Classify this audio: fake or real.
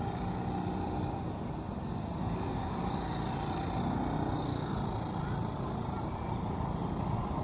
real